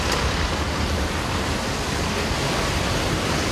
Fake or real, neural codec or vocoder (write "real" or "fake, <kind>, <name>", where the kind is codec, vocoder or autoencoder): real